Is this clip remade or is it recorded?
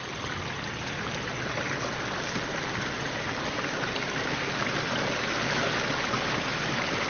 recorded